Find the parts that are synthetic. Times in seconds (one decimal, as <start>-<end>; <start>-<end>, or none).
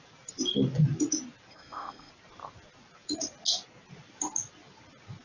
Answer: 1.5-2.1